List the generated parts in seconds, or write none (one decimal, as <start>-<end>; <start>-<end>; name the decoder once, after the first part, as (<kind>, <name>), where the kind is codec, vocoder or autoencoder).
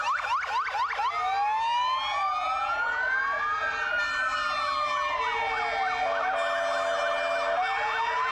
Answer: none